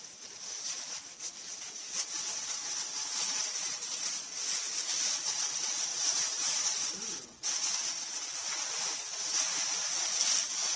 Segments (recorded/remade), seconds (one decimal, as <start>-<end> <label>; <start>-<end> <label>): 0.0-5.9 recorded; 5.9-6.7 remade; 6.7-10.8 recorded